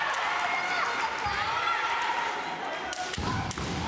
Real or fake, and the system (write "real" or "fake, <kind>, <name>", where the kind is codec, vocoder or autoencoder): real